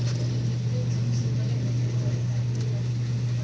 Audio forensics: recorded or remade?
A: recorded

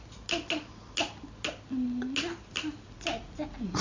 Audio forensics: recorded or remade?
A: recorded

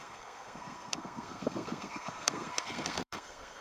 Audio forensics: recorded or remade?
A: remade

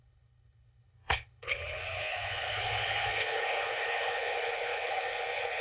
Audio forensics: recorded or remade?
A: remade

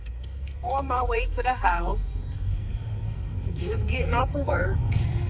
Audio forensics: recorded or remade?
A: remade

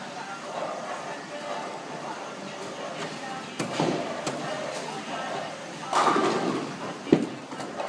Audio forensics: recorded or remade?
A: recorded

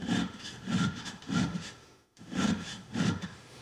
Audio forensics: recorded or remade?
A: remade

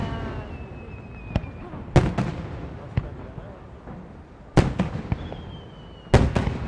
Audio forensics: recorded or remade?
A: recorded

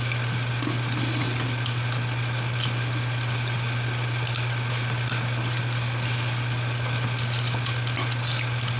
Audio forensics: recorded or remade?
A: recorded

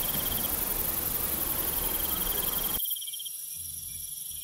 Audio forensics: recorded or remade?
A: recorded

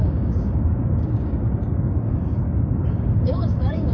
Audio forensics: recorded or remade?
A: remade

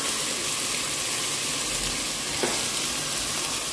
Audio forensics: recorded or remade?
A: recorded